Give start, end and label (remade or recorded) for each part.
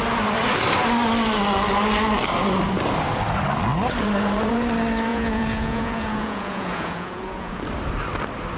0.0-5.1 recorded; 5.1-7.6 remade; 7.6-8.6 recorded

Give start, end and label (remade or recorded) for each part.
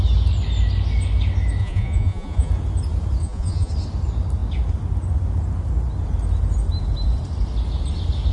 0.0-1.6 recorded; 1.6-2.5 remade; 2.5-3.2 recorded; 3.2-3.7 remade; 3.7-8.3 recorded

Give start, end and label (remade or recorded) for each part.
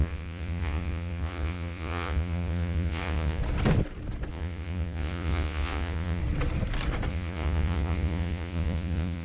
0.0-3.4 remade; 3.4-4.3 recorded; 4.3-6.2 remade; 6.2-7.1 recorded; 7.1-9.2 remade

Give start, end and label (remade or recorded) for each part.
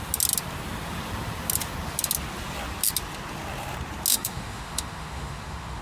0.0-4.1 recorded; 4.1-5.8 remade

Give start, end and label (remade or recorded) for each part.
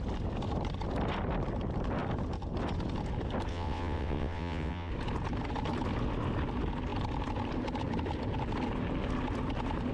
0.0-3.5 recorded; 3.5-4.9 remade; 4.9-9.9 recorded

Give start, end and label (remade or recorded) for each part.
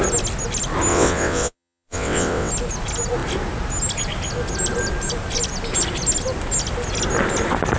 0.0-0.9 recorded; 0.9-2.5 remade; 2.5-7.8 recorded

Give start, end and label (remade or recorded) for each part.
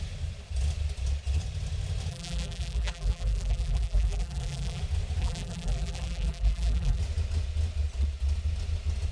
0.0-2.1 recorded; 2.1-4.8 remade; 4.8-5.2 recorded; 5.2-7.0 remade; 7.0-9.1 recorded